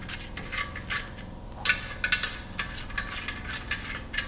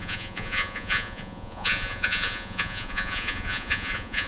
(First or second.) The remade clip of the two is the second